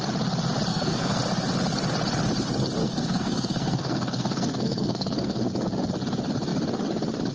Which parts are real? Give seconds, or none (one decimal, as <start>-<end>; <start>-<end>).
0.0-0.7; 1.2-2.8; 5.5-7.3